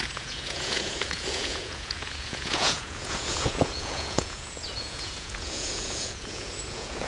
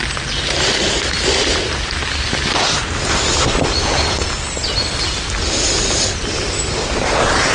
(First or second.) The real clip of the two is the second